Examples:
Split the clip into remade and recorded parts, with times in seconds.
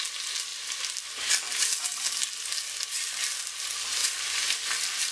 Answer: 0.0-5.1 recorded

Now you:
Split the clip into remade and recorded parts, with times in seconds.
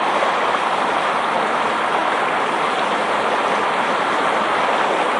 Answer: 0.0-5.2 recorded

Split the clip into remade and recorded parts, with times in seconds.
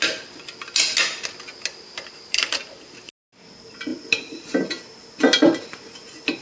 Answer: 0.0-6.4 recorded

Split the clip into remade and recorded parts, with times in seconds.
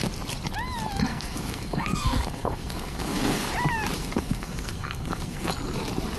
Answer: 0.0-1.1 recorded; 1.1-3.5 remade; 3.5-4.0 recorded; 4.0-5.5 remade; 5.5-6.2 recorded